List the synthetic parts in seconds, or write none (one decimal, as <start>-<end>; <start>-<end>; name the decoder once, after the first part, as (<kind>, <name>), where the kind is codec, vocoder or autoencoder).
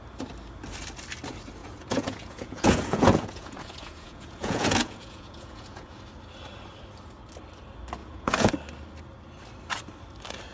1.6-6.0 (vocoder, Vocos); 8.0-8.5